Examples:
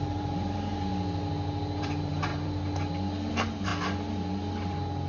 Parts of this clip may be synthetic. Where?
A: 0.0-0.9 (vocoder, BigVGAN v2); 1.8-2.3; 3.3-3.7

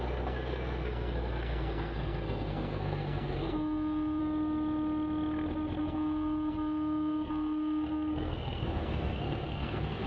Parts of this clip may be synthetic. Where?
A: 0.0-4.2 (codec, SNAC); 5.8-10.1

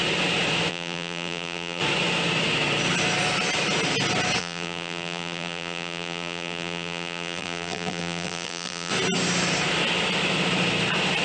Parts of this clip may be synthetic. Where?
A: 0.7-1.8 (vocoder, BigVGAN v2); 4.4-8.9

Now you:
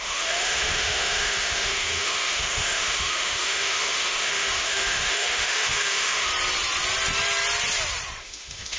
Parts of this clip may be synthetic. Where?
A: 0.0-6.3 (autoencoder, DAC-VAE); 8.2-8.8

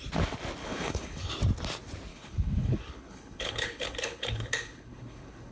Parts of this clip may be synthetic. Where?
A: 0.6-1.3 (codec, HILCodec); 2.1-5.5

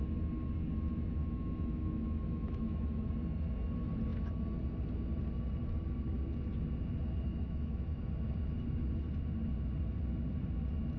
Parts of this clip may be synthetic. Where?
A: 1.2-3.1 (autoencoder, DAC-VAE); 7.3-8.0

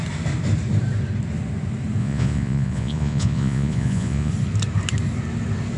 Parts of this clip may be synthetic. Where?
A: 2.0-4.3 (vocoder, Vocos)